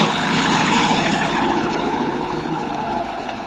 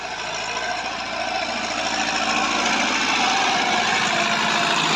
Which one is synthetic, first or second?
first